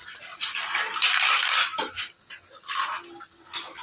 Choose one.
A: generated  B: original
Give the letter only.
B